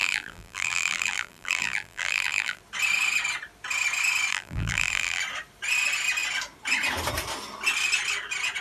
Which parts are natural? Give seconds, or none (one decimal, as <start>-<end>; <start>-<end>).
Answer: 2.6-4.3; 5.2-8.6